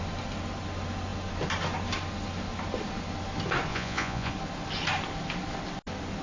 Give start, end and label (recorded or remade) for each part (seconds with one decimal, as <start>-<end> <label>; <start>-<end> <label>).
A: 0.0-3.7 recorded; 3.7-4.3 remade; 4.3-6.2 recorded

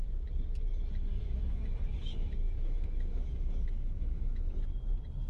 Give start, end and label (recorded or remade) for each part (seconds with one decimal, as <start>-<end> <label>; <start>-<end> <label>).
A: 0.0-1.2 recorded; 1.2-4.4 remade; 4.4-5.3 recorded